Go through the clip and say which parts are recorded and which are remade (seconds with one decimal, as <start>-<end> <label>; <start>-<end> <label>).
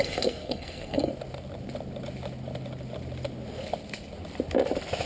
0.0-1.1 remade; 1.1-5.1 recorded